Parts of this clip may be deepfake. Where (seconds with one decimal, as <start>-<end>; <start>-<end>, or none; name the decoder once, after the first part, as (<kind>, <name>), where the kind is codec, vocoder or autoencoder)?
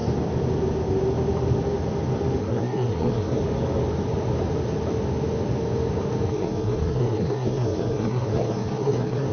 2.4-3.4 (codec, SNAC); 6.3-9.3